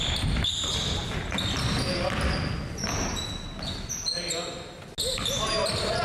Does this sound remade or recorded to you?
recorded